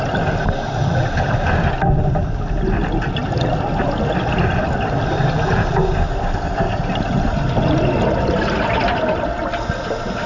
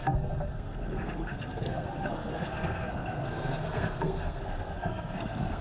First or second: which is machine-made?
second